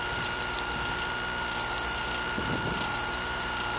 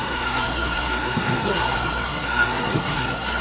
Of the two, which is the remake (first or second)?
second